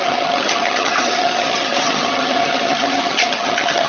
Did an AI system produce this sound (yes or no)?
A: yes